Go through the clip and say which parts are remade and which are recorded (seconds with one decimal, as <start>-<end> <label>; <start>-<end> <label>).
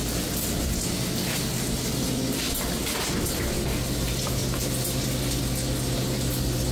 0.0-6.7 recorded